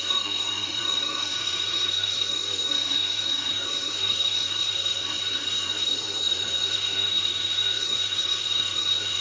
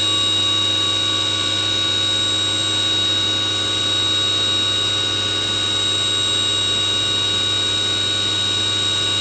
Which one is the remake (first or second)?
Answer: first